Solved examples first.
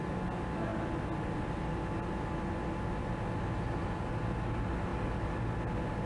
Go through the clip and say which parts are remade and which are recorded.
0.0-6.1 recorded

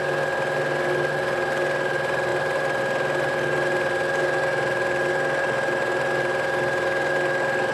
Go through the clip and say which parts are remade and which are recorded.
0.0-7.7 recorded

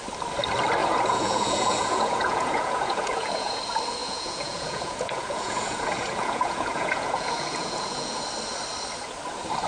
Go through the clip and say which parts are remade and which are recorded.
0.0-0.8 recorded; 0.8-3.6 remade; 3.6-4.0 recorded; 4.0-8.2 remade; 8.2-9.7 recorded

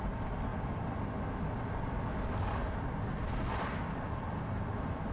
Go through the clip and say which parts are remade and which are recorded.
0.0-5.1 recorded

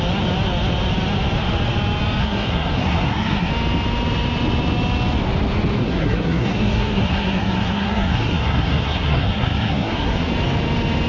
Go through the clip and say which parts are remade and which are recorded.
0.0-2.2 recorded; 2.2-3.5 remade; 3.5-5.8 recorded; 5.8-10.3 remade; 10.3-11.1 recorded

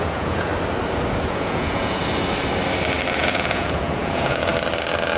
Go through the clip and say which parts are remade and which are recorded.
0.0-0.5 remade; 0.5-1.3 recorded; 1.3-2.0 remade; 2.0-3.2 recorded; 3.2-4.5 remade; 4.5-5.2 recorded

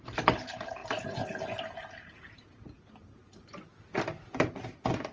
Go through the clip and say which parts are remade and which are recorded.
0.0-5.1 recorded